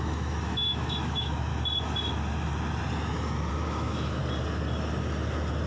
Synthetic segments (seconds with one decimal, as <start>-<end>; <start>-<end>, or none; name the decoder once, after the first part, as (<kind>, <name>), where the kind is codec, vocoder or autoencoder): 0.0-1.5 (autoencoder, DAC-VAE); 3.5-4.2